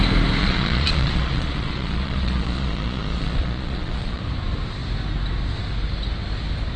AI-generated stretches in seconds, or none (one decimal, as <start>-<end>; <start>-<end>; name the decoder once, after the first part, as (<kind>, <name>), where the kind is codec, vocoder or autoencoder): 0.4-4.2 (vocoder, Vocos)